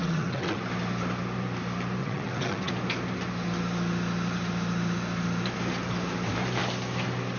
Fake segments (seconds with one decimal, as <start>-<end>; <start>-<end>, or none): 0.0-0.6; 2.0-2.7